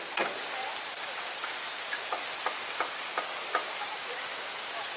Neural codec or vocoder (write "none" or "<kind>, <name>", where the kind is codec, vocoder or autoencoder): none